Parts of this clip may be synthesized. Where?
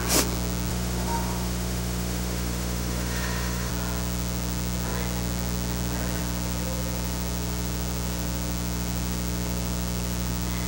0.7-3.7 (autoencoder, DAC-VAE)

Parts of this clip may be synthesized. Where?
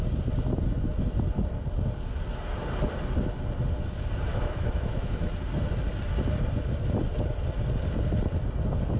4.3-5.3 (autoencoder, DAC-VAE)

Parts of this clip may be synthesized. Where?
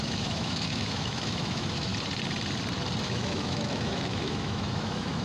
0.0-1.9 (autoencoder, DAC-VAE); 3.0-5.2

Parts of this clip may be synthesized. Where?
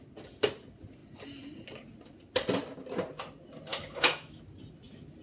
3.7-4.4 (autoencoder, DAC-VAE)